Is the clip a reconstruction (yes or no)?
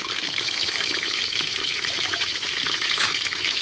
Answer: yes